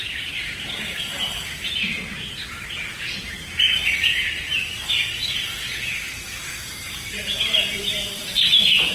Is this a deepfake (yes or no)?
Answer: yes